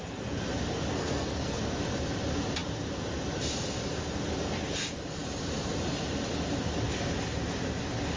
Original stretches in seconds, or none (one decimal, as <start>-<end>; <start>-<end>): 0.0-0.9; 1.6-8.2